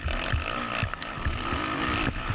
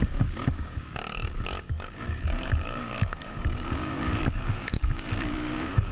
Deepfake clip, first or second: second